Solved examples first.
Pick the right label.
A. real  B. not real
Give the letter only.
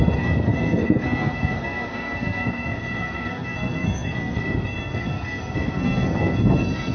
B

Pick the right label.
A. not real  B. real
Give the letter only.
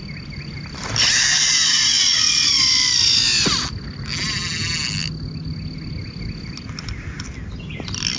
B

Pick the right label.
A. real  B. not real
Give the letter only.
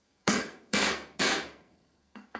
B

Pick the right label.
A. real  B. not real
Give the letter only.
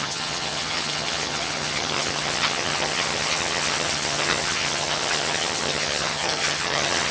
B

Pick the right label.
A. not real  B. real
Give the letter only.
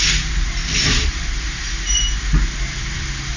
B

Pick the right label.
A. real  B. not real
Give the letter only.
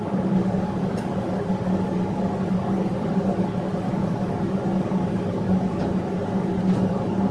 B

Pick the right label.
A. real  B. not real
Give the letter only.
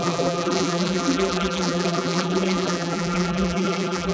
B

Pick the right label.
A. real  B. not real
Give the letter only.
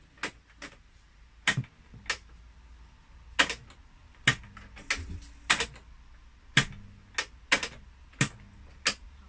A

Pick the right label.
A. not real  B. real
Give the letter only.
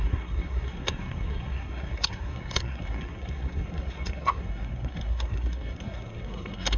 A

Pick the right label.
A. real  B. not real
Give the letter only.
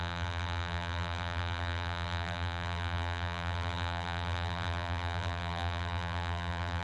B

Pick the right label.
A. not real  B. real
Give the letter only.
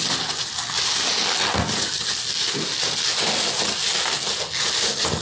B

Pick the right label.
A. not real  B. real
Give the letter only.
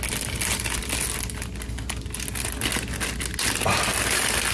B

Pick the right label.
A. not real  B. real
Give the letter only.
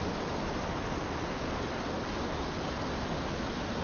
B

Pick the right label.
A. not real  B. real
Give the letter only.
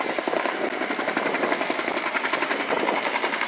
B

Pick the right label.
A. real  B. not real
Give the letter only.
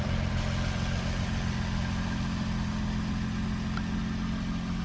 A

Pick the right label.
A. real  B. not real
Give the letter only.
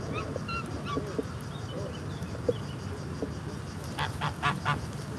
A